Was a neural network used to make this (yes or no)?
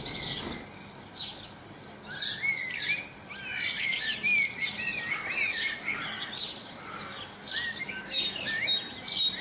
no